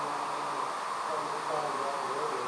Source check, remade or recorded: recorded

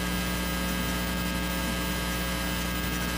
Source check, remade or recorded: recorded